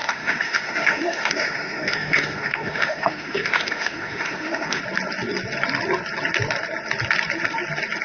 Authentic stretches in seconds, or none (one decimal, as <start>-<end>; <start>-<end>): 4.8-8.0

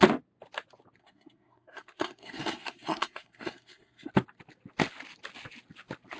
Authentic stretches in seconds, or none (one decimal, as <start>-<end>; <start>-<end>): 0.0-1.0; 4.1-6.2